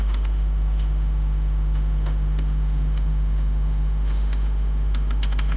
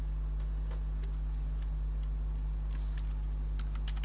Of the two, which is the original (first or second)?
second